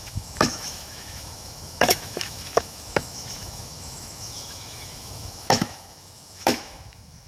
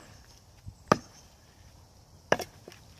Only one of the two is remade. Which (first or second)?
first